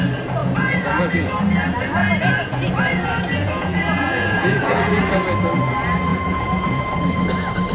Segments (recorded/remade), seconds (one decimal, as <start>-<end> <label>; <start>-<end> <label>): 0.0-0.4 recorded; 0.4-1.4 remade; 1.4-2.0 recorded; 2.0-2.8 remade; 2.8-3.4 recorded; 3.4-5.0 remade; 5.0-6.1 recorded; 6.1-6.8 remade; 6.8-7.7 recorded